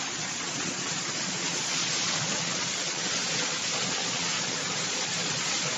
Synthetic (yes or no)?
yes